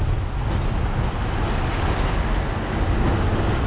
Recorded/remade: recorded